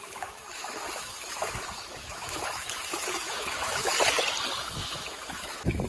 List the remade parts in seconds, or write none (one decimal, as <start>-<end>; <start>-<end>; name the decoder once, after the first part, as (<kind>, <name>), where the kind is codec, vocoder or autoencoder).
0.0-3.9 (autoencoder, DAC-VAE); 4.6-5.9